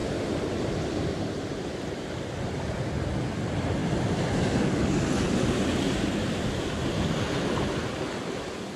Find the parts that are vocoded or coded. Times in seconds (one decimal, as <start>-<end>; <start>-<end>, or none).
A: none

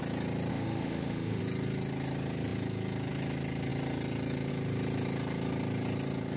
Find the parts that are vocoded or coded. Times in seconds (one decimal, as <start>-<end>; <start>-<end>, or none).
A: 0.5-1.4